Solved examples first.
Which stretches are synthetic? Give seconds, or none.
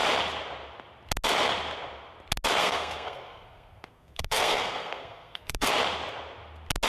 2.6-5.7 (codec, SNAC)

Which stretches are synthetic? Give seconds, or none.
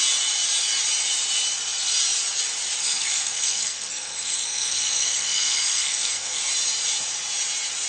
2.8-6.4 (codec, SNAC)